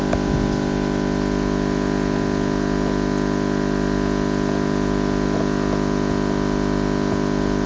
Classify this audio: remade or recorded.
recorded